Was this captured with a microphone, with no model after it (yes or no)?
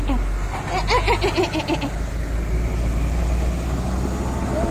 yes